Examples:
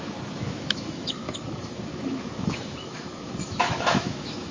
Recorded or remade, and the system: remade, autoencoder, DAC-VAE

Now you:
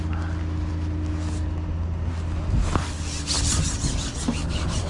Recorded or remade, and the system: recorded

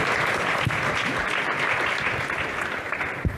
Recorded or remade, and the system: recorded